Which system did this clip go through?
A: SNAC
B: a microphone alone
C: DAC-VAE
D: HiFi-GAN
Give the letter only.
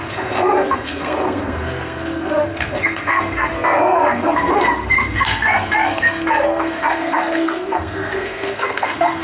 A